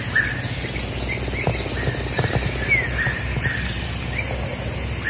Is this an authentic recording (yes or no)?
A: yes